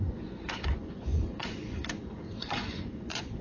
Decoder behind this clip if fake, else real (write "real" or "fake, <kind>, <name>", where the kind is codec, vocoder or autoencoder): fake, vocoder, Vocos